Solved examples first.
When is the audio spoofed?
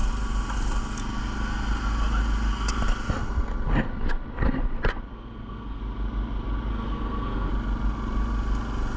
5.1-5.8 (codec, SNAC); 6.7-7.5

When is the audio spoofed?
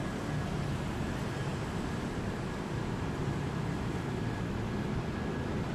none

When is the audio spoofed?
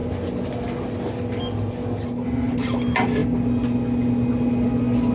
none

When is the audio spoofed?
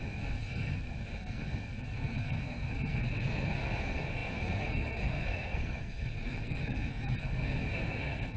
0.0-8.4 (codec, SNAC)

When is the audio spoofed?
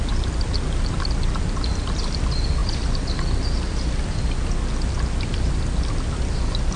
none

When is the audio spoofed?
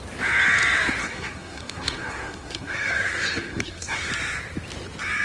1.0-4.1 (codec, SNAC)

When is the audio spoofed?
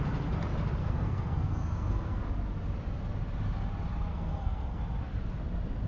0.8-2.2 (codec, SNAC); 4.1-4.8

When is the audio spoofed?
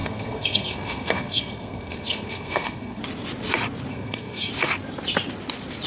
0.0-3.0 (codec, SNAC); 3.9-4.5